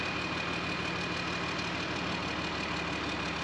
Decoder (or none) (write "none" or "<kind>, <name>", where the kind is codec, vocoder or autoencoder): none